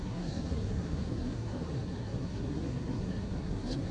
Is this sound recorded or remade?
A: remade